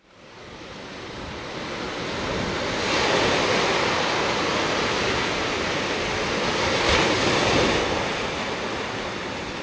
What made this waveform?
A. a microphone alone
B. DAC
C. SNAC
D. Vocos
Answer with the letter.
A